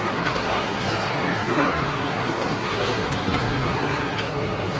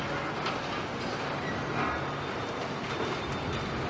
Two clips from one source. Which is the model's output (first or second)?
first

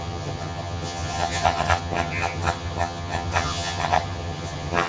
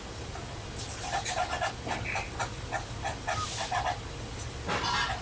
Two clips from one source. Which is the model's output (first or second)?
first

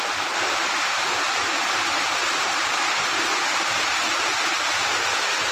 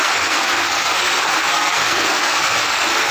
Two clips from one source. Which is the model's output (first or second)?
second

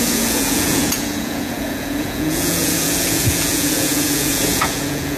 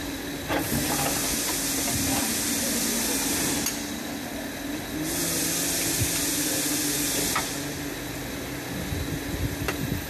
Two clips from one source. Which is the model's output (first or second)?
first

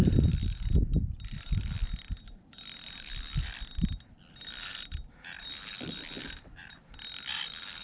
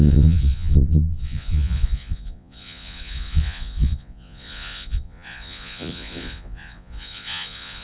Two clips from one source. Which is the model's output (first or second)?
second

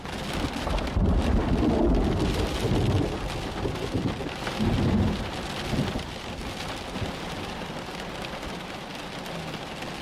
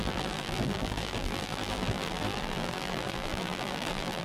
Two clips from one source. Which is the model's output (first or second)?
second